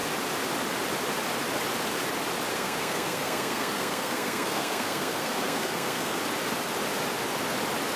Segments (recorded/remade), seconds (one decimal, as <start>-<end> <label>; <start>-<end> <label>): 0.0-2.5 recorded; 2.5-6.2 remade; 6.2-8.0 recorded